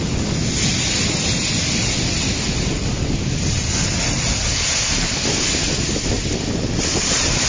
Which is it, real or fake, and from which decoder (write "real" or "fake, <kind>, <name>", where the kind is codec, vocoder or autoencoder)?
real